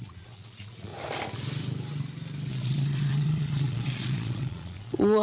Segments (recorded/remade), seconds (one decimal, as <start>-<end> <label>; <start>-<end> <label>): 0.0-0.9 remade; 0.9-2.5 recorded; 2.5-5.2 remade